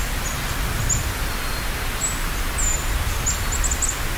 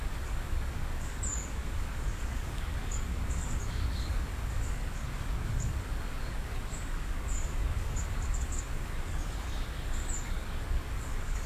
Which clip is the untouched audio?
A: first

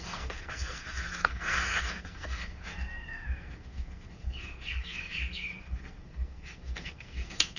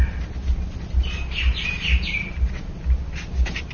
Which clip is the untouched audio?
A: second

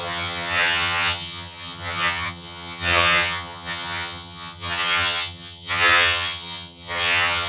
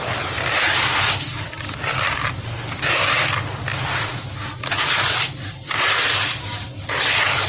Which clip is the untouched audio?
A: second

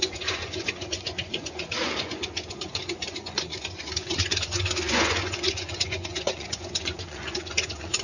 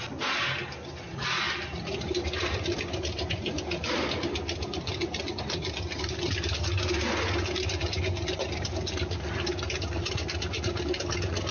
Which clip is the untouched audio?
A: second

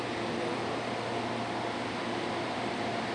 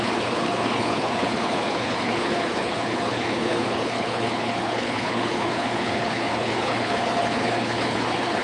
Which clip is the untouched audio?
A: first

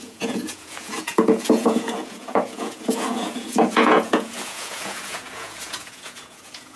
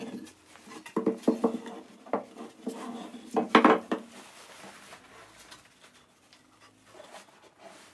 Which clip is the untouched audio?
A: second